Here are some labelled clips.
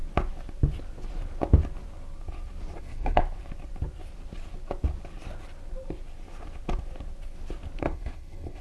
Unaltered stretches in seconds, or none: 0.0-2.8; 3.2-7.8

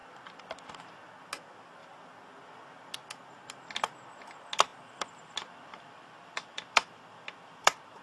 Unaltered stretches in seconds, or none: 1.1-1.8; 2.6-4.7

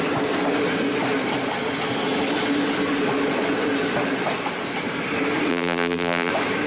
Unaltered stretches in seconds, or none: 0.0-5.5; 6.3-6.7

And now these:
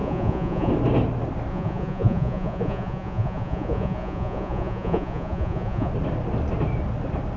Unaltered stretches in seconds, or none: 0.7-1.5; 5.9-7.4

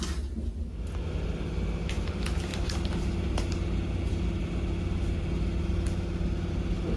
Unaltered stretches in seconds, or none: 0.0-2.5; 3.4-7.0

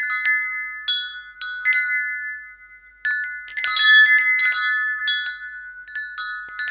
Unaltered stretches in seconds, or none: 0.0-6.7